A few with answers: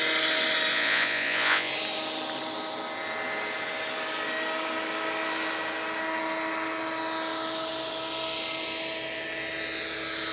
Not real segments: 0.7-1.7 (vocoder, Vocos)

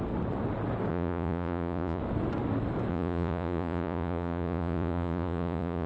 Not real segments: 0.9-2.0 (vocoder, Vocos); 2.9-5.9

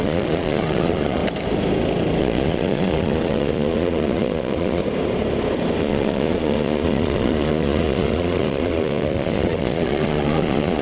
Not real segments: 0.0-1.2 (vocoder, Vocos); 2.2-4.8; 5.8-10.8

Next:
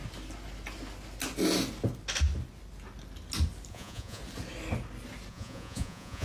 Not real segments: 3.7-4.2 (vocoder, Vocos); 5.3-6.2